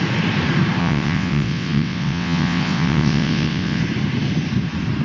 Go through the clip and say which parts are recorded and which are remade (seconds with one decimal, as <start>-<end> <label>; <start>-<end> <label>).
0.0-0.8 recorded; 0.8-3.8 remade; 3.8-5.0 recorded